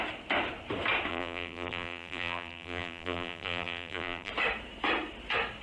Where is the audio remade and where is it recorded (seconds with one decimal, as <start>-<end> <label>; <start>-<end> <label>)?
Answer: 0.0-1.1 recorded; 1.1-4.3 remade; 4.3-5.6 recorded